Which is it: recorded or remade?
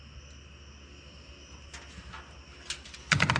recorded